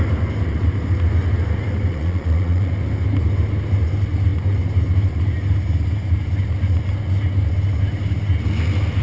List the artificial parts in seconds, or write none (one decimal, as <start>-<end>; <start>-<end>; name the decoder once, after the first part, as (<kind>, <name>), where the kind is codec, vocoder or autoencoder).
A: 1.9-2.7 (vocoder, Vocos)